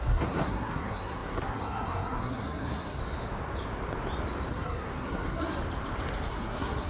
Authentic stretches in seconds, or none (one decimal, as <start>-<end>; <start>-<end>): 3.0-4.5; 5.6-6.3